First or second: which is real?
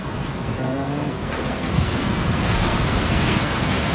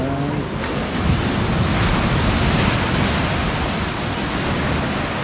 second